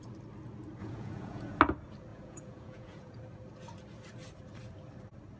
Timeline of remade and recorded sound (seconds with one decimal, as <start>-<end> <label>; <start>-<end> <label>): 0.0-0.8 recorded; 0.8-1.6 remade; 1.6-2.1 recorded; 2.1-3.2 remade; 3.2-5.4 recorded